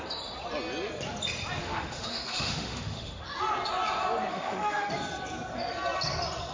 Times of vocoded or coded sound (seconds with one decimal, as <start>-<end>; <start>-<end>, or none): 1.6-3.2; 4.3-4.9